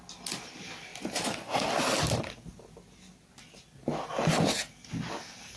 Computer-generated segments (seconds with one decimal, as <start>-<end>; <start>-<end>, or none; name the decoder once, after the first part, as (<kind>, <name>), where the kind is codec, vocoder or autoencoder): none